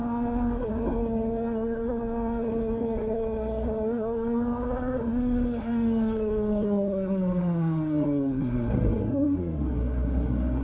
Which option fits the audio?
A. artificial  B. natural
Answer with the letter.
A